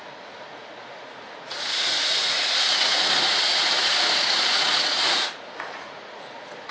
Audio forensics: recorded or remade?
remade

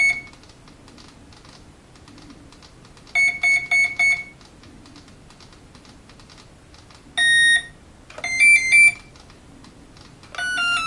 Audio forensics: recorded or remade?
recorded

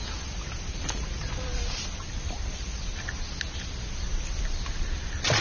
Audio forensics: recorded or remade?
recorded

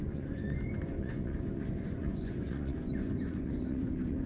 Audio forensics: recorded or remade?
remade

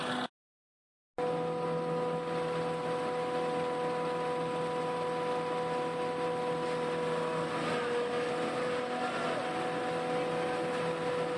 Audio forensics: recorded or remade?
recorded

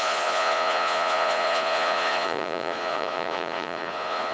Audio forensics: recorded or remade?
remade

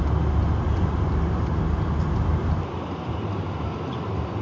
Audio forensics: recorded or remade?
recorded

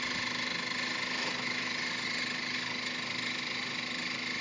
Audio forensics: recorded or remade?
recorded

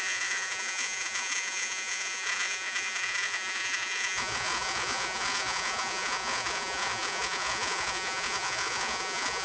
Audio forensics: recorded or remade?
remade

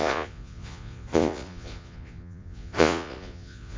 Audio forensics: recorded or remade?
remade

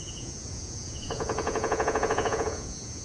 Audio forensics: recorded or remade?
remade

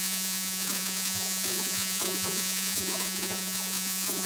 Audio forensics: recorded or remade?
remade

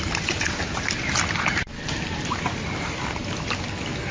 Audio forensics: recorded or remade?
recorded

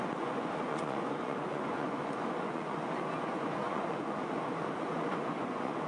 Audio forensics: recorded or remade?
remade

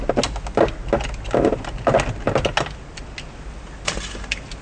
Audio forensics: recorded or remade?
recorded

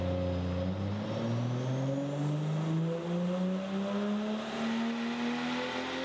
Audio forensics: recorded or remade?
recorded